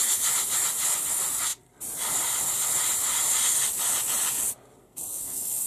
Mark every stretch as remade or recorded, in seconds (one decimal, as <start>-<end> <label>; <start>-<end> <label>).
0.0-4.8 recorded; 4.8-5.7 remade